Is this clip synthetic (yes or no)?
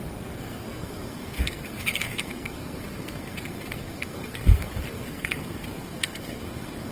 yes